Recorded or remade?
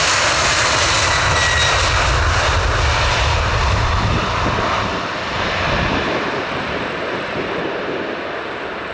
recorded